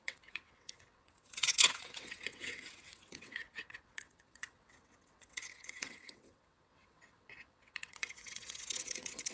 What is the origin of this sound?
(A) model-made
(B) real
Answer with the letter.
A